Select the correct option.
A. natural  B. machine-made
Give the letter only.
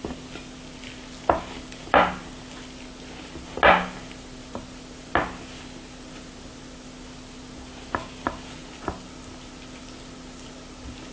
A